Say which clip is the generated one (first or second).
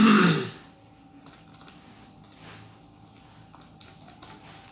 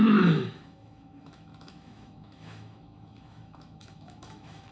second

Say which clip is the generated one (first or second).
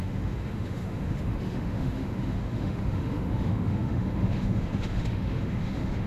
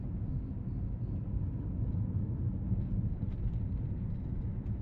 first